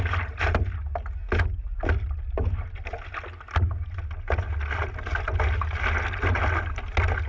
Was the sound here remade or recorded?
recorded